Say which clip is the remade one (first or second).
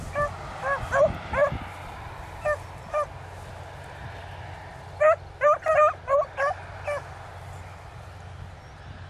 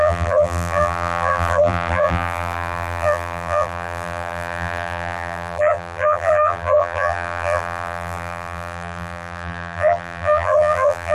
second